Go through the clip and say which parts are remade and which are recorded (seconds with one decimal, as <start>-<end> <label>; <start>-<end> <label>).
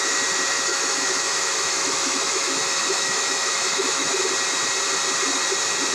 0.0-0.7 recorded; 0.7-4.2 remade; 4.2-5.9 recorded